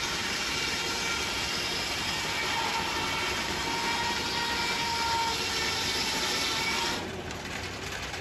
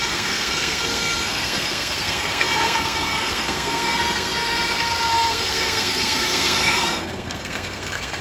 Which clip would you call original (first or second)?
first